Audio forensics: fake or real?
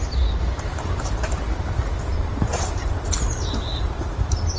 real